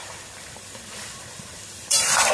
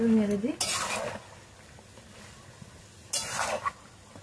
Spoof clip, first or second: first